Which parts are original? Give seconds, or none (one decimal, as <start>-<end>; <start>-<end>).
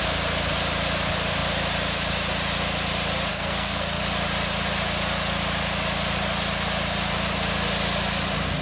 0.0-3.3; 4.0-8.6